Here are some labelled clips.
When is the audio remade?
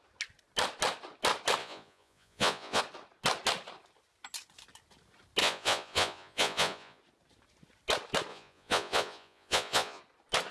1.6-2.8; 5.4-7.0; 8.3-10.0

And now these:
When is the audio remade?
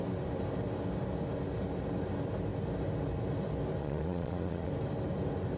3.8-4.7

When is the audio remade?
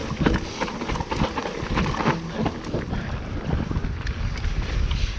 none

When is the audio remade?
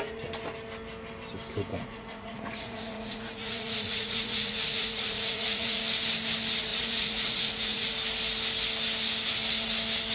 1.7-5.8; 6.7-7.9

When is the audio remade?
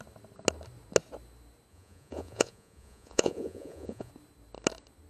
1.7-4.1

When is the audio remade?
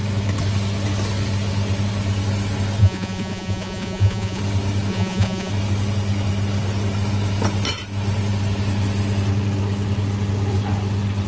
2.8-4.4; 4.9-5.5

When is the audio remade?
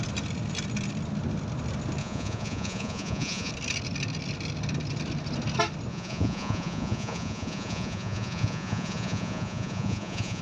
2.0-3.5; 5.9-10.4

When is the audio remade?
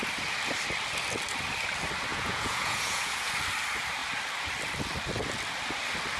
2.1-3.3